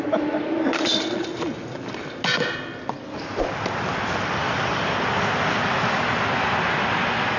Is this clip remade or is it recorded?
recorded